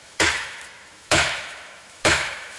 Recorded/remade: remade